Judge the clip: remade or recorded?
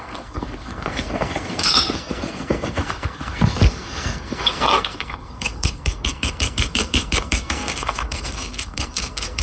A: remade